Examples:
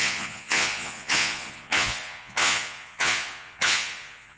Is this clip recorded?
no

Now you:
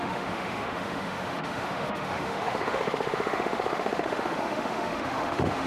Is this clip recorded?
no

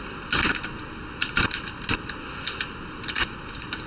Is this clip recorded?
yes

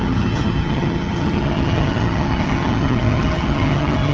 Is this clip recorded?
no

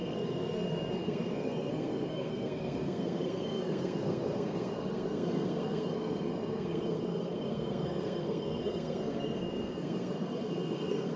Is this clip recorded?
no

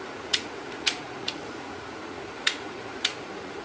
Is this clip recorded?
no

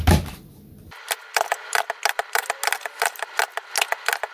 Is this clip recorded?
yes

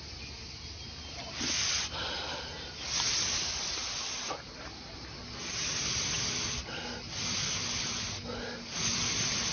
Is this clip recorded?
yes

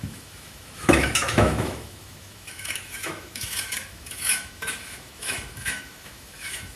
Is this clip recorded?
no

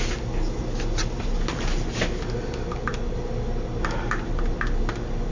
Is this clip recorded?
yes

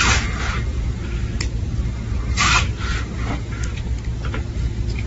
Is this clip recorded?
yes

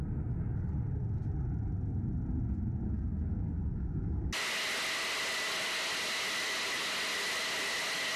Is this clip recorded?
yes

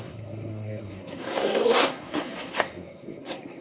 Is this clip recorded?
no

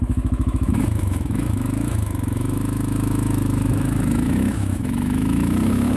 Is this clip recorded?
no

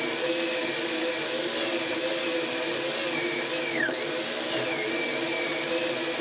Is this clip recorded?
yes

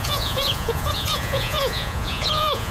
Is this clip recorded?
no